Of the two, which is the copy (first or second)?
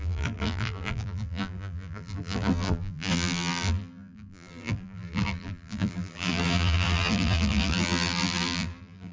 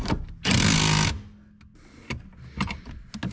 first